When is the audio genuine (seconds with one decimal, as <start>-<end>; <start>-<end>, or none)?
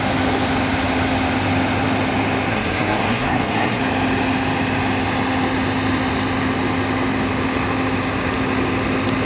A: 0.0-2.5; 3.8-9.3